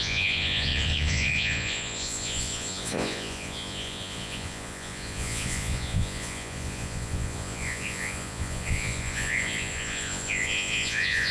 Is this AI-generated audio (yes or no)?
yes